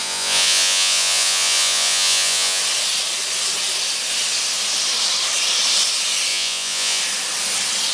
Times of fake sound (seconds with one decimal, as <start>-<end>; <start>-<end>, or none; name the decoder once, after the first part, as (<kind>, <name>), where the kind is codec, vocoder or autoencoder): 0.0-2.6 (vocoder, Vocos); 6.3-7.0